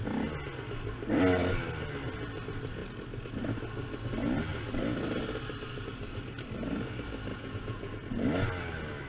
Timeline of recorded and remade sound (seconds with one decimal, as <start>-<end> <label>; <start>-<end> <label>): 0.0-7.3 recorded; 7.3-7.9 remade; 7.9-9.1 recorded